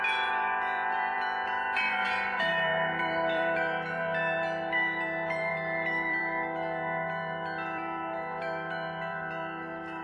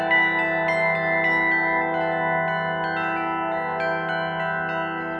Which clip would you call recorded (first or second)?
second